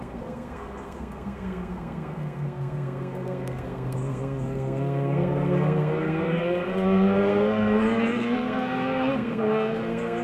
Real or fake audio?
fake